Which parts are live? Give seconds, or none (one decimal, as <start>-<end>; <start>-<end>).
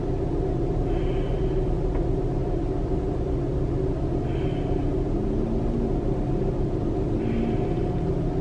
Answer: 0.0-8.4